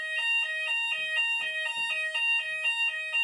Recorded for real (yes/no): yes